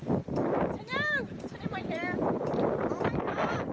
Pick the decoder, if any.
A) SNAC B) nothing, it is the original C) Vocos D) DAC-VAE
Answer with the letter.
B